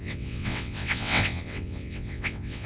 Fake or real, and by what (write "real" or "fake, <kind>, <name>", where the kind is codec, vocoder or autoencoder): fake, vocoder, WaveNeXt